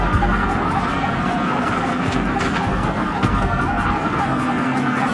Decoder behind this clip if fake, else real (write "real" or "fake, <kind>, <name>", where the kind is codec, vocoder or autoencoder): fake, codec, SNAC